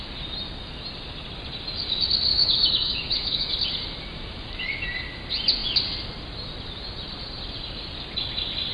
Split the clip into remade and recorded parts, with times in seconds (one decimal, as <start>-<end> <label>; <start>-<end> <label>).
0.0-2.3 recorded; 2.3-3.5 remade; 3.5-8.7 recorded